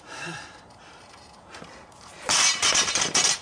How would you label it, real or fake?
fake